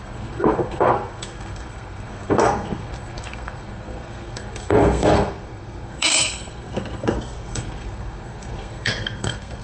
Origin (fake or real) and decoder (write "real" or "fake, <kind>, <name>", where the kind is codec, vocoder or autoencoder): fake, codec, SNAC